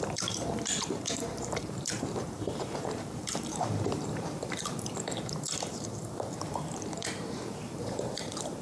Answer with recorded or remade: remade